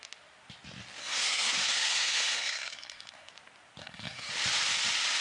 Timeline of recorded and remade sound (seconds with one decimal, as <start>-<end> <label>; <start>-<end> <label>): 0.0-1.0 recorded; 1.0-3.3 remade; 3.3-3.8 recorded; 3.8-4.3 remade; 4.3-5.2 recorded

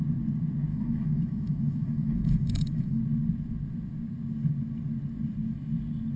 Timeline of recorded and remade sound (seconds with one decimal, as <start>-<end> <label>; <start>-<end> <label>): 0.0-0.7 recorded; 0.7-3.0 remade; 3.0-6.2 recorded